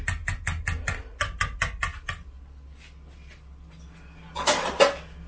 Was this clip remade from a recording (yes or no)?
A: no